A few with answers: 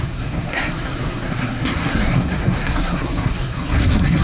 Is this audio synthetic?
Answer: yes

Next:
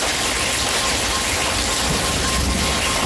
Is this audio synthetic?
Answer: no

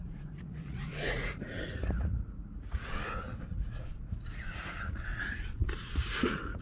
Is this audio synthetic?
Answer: yes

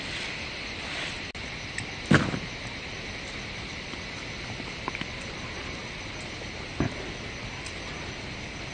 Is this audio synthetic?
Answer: no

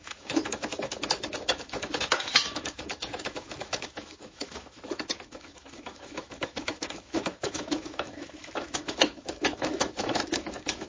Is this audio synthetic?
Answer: yes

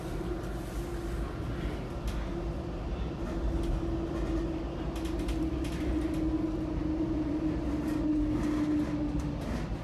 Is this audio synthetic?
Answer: no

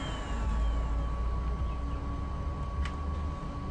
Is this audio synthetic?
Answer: no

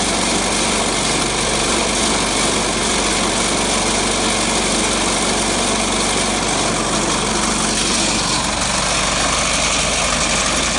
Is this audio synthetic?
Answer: no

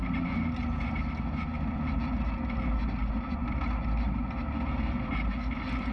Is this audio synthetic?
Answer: no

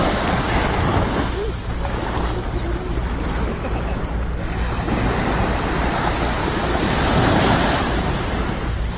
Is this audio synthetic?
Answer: no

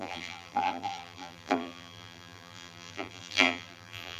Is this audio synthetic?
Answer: yes